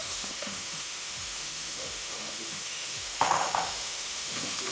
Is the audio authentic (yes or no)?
no